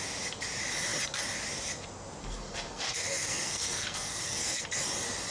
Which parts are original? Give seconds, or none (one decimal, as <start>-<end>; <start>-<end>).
0.0-2.2; 4.7-5.3